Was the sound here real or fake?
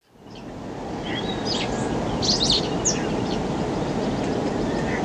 real